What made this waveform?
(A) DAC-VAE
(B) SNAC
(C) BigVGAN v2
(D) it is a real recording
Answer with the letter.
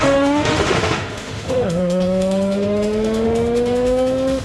A